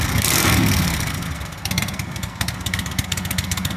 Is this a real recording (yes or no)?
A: no